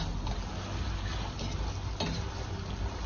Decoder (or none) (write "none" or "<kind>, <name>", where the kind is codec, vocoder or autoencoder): none